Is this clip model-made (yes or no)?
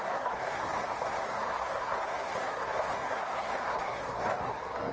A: yes